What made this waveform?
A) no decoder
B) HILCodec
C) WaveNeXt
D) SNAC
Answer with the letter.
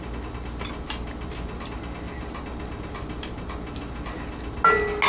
A